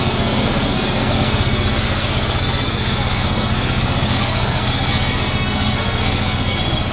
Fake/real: fake